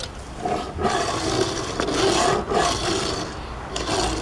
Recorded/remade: recorded